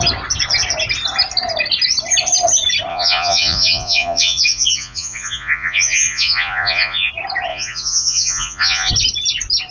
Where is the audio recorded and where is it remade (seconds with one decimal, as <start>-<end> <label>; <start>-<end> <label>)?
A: 0.0-2.9 recorded; 2.9-7.1 remade; 7.1-7.5 recorded; 7.5-8.9 remade; 8.9-9.7 recorded